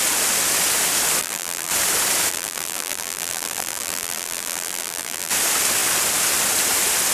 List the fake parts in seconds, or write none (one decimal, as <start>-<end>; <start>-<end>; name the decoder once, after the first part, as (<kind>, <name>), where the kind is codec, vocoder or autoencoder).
1.2-1.7 (vocoder, BigVGAN v2); 2.3-5.3